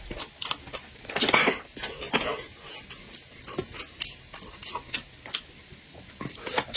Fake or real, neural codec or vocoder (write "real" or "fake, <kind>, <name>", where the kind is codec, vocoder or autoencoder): real